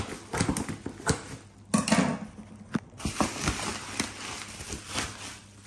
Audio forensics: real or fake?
real